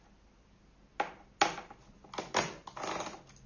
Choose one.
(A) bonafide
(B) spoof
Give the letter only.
A